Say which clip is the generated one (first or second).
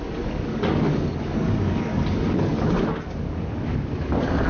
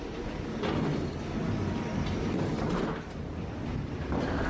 first